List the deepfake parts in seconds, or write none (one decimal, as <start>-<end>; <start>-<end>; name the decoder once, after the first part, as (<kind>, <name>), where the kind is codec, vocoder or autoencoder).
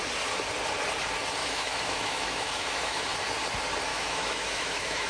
1.4-3.0 (autoencoder, DAC-VAE); 3.9-5.1